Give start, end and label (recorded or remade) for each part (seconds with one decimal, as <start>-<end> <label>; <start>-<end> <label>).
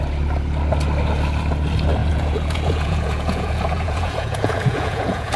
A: 0.0-2.0 recorded; 2.0-5.4 remade